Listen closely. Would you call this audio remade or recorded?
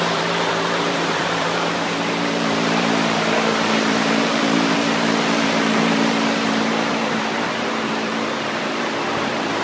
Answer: remade